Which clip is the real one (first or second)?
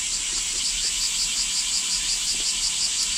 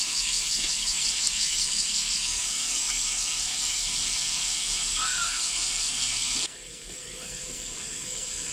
first